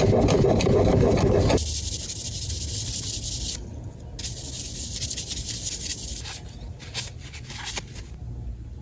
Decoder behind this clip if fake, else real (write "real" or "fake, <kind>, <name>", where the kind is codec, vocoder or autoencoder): real